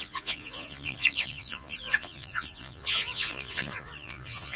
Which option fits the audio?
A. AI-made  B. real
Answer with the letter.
A